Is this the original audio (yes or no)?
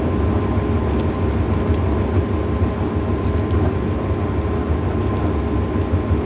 yes